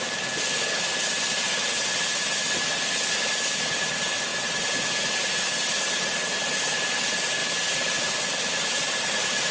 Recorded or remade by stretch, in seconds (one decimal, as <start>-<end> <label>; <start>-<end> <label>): 0.0-7.4 recorded; 7.4-7.9 remade; 7.9-9.5 recorded

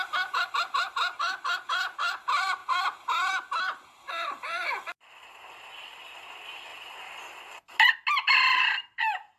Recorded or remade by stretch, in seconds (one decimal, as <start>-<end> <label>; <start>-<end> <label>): 0.0-9.4 recorded

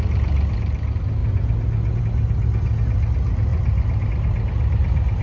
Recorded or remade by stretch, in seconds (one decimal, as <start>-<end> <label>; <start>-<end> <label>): 0.0-5.2 recorded

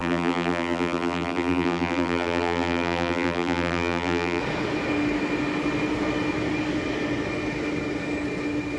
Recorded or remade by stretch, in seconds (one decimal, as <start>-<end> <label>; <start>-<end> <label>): 0.0-4.4 remade; 4.4-8.8 recorded